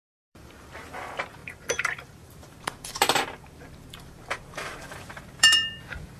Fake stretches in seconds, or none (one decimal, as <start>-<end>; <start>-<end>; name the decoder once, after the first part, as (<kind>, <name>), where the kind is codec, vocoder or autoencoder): 0.0-6.2 (vocoder, BigVGAN v2)